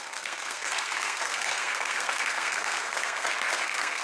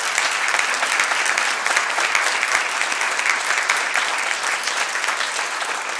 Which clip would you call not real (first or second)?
first